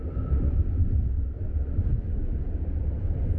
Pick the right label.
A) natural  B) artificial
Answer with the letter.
A